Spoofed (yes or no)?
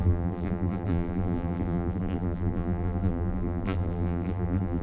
yes